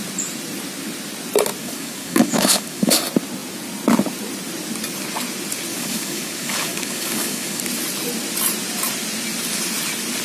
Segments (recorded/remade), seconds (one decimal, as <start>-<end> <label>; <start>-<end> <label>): 0.0-1.6 recorded; 1.6-3.0 remade; 3.0-5.7 recorded; 5.7-7.6 remade; 7.6-10.2 recorded